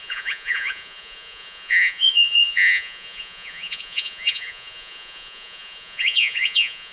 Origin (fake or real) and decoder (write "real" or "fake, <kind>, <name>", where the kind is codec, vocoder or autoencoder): fake, vocoder, Vocos